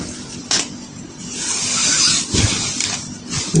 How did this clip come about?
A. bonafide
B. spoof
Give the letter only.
A